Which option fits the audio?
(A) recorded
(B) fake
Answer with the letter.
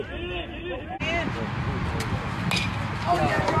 A